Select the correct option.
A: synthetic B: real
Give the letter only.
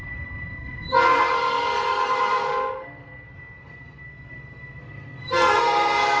A